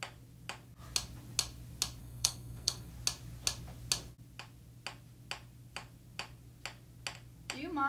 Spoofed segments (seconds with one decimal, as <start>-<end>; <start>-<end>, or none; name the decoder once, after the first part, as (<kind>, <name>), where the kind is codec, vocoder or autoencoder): 2.0-2.9 (codec, SNAC)